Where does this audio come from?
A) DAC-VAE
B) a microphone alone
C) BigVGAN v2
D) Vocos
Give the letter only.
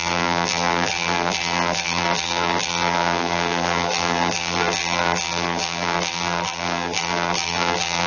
C